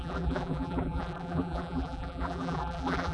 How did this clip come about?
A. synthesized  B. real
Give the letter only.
A